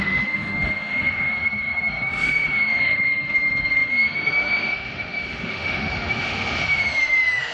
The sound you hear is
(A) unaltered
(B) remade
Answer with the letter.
B